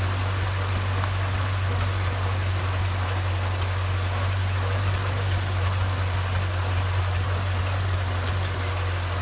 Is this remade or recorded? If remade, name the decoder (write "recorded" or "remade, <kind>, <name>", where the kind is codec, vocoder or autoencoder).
recorded